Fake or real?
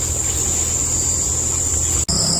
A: real